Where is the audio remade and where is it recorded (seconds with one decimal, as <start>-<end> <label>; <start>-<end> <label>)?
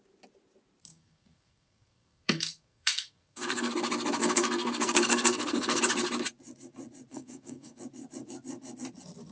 0.0-0.9 recorded; 0.9-3.7 remade; 3.7-4.2 recorded; 4.2-5.8 remade; 5.8-7.1 recorded; 7.1-7.8 remade; 7.8-9.3 recorded